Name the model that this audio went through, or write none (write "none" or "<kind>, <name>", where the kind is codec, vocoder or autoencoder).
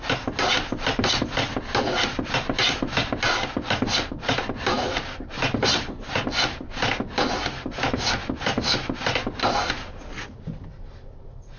none